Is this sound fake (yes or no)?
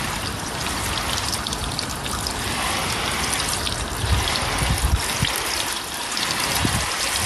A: no